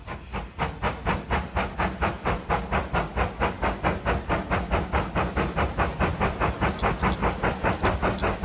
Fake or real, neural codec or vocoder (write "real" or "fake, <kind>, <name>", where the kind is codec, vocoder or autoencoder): real